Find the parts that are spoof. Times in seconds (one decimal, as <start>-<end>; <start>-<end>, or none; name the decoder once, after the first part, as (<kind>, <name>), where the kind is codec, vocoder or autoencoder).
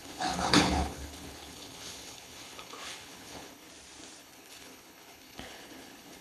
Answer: 0.0-3.7 (codec, HILCodec); 4.2-6.2